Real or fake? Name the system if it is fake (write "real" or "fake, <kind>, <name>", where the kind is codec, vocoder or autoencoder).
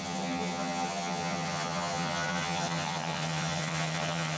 fake, vocoder, HiFi-GAN